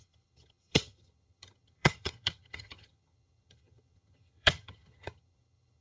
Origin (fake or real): fake